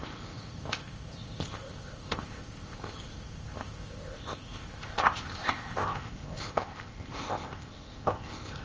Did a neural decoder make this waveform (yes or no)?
yes